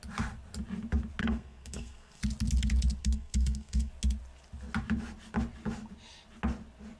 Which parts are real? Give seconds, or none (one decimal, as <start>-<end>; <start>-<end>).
0.0-1.2; 2.2-3.0; 3.9-7.0